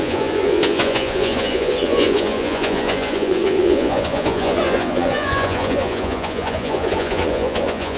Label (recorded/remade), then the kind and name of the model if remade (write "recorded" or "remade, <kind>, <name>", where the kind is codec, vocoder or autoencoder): remade, vocoder, Vocos